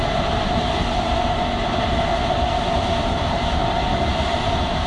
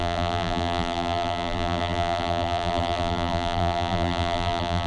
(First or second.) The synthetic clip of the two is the second